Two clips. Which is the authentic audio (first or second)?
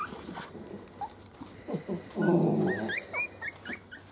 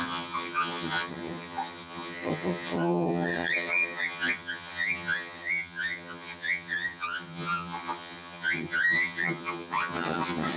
first